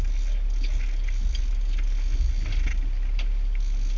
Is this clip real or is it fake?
real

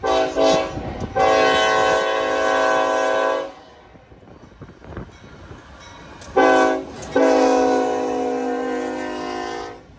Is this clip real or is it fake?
real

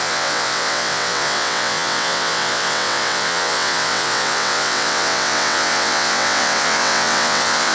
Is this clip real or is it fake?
fake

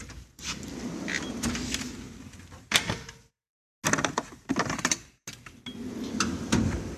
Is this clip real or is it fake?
real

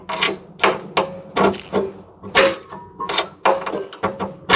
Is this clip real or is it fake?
real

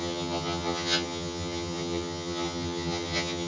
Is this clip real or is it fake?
fake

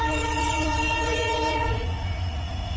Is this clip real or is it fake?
fake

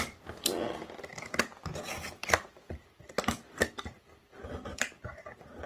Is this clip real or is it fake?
real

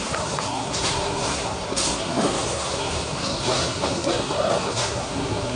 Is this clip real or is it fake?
fake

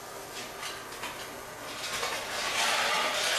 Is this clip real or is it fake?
real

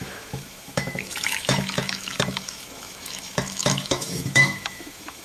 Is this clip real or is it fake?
fake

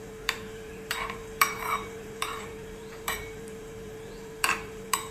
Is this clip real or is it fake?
fake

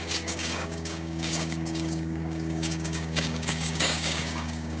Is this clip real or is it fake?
fake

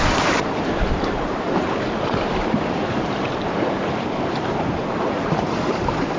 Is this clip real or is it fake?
fake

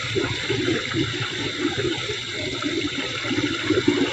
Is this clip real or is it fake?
real